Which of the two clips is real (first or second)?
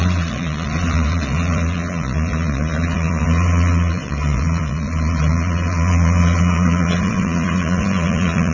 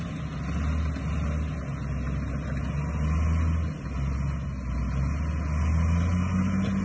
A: second